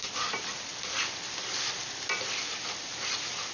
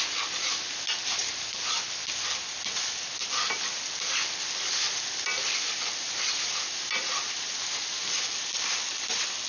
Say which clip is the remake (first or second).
first